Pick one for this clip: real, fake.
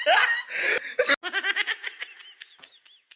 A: real